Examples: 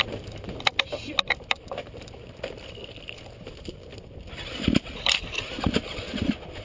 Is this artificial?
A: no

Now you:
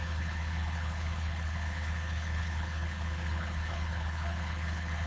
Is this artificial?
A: yes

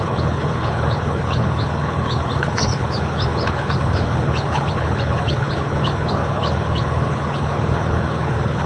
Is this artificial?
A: yes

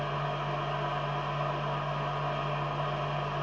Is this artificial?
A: no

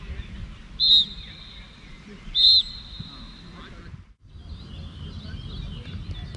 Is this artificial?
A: no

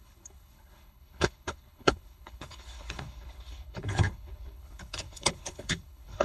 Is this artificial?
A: yes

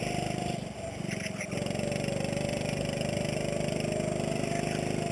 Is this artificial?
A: no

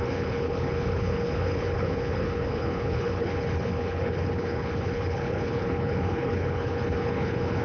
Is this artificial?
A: yes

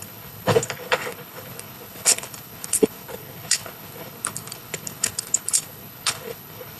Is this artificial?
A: yes